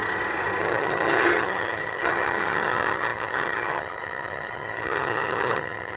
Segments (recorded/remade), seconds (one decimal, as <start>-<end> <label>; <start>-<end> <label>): 0.0-0.6 recorded; 0.6-6.0 remade